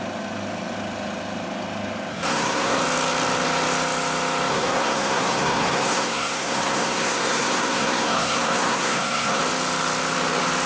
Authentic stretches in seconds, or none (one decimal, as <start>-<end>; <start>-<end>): 0.0-2.1; 2.8-4.5; 9.4-10.7

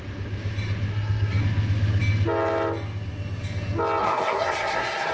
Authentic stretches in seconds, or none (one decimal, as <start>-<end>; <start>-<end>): 0.0-0.9; 1.4-4.0